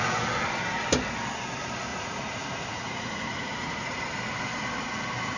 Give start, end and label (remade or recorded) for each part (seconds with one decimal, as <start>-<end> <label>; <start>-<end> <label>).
0.0-1.9 recorded; 1.9-4.0 remade; 4.0-5.4 recorded